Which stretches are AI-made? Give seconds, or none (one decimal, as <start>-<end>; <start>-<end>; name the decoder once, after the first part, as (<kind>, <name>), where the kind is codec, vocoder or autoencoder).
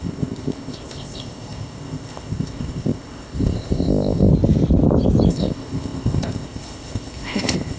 0.0-4.3 (codec, ZipCodec); 5.3-7.8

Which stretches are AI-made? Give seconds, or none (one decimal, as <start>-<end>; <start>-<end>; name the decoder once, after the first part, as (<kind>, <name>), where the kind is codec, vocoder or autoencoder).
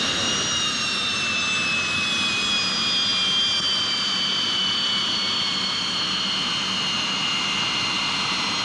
none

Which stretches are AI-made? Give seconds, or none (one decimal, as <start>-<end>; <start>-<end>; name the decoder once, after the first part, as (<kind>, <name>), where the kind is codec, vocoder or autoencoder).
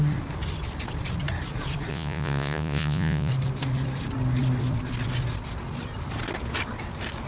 1.9-3.3 (vocoder, Vocos)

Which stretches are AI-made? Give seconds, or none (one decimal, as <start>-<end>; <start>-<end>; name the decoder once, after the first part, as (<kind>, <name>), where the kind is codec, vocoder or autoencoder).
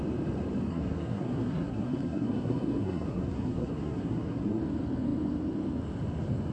0.7-4.6 (codec, SNAC)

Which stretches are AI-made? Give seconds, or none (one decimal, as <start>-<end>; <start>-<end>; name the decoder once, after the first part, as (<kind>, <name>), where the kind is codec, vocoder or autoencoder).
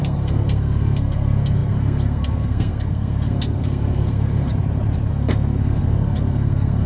0.0-4.5 (codec, SNAC); 5.1-6.9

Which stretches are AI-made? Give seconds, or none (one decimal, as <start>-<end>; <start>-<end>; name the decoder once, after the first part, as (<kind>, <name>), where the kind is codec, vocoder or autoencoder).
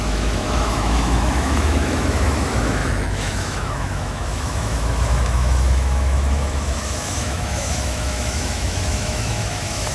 0.0-9.9 (autoencoder, DAC-VAE)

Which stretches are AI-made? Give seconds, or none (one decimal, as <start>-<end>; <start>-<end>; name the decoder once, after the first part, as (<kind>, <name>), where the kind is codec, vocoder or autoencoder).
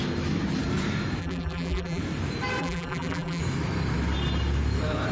1.2-2.0 (vocoder, BigVGAN v2); 2.6-3.4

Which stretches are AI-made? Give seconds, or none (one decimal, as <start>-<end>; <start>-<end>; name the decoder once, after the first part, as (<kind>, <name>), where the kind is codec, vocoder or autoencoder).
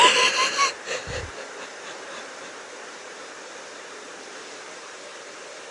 0.0-1.0 (vocoder, BigVGAN v2); 4.3-5.7